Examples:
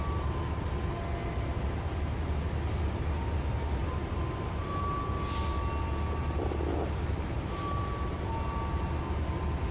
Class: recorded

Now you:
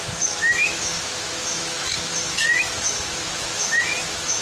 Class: remade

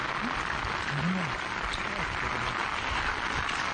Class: recorded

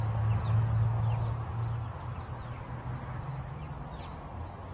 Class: recorded